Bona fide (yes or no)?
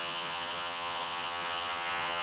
no